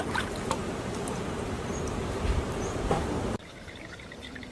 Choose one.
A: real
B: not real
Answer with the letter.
B